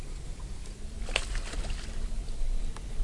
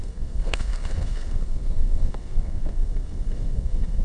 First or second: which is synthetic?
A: second